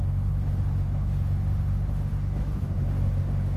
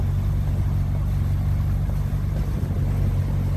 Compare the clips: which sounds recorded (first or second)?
second